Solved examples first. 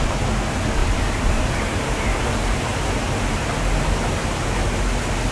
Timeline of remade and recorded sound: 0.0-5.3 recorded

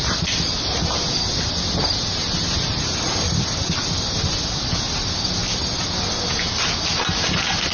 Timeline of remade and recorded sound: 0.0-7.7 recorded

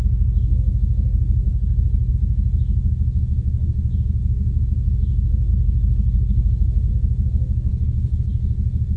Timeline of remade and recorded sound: 0.0-1.4 recorded; 1.4-2.1 remade; 2.1-5.5 recorded; 5.5-6.9 remade; 6.9-7.7 recorded; 7.7-8.3 remade; 8.3-9.0 recorded